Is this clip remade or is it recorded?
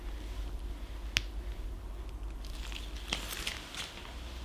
recorded